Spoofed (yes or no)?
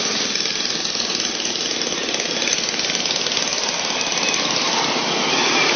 no